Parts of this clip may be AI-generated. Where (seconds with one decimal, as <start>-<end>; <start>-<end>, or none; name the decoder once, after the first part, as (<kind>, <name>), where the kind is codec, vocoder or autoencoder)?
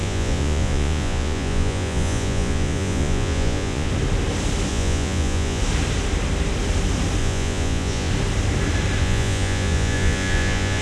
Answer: 0.0-3.9 (vocoder, Vocos); 4.7-5.6; 7.2-8.1; 9.0-10.8